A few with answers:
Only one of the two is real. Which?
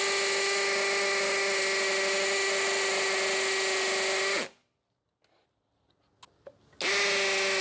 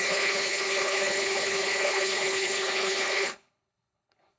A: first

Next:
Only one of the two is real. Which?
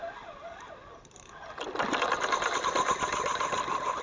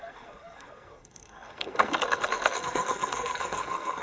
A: first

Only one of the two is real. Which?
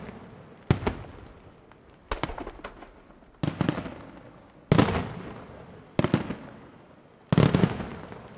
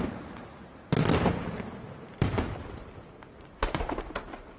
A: first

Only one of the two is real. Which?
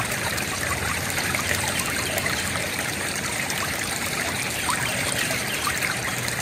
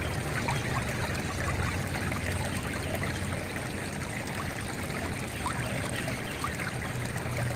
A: second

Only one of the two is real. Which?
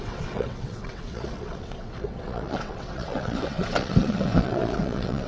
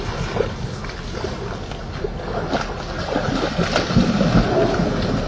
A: second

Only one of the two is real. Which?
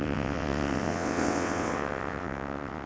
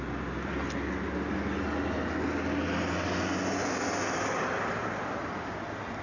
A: second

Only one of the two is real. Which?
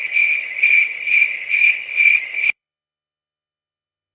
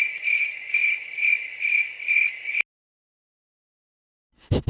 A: second